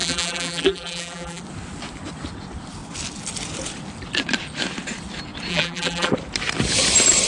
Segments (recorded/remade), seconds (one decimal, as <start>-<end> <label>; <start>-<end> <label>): 0.0-1.4 remade; 1.4-5.5 recorded; 5.5-6.1 remade; 6.1-7.3 recorded